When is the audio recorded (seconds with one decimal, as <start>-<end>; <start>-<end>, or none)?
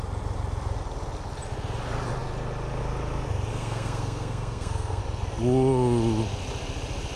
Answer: 0.0-3.5; 5.0-7.2